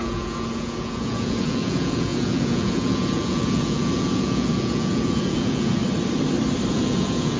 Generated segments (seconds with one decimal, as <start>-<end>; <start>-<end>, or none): 0.0-5.8; 6.7-7.4